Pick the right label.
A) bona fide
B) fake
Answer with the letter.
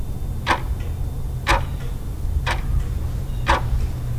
A